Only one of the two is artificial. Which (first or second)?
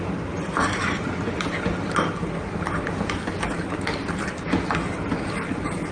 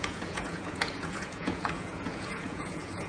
second